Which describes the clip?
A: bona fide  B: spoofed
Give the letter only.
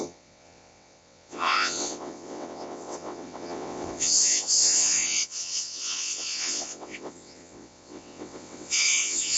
B